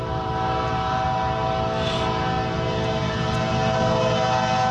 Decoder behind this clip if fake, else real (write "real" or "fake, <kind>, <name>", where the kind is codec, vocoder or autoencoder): real